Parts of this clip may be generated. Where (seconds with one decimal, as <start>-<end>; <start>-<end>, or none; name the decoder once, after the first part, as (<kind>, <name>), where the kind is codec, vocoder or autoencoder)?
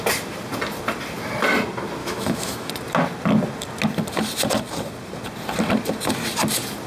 2.0-2.7 (autoencoder, DAC-VAE)